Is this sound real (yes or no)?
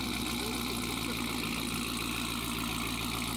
yes